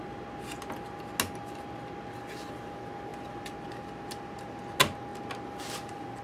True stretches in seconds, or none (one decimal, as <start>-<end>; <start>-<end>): 0.0-6.2